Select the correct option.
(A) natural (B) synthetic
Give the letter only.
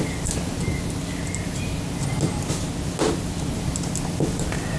A